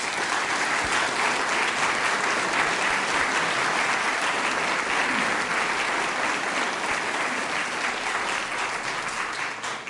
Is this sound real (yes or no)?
yes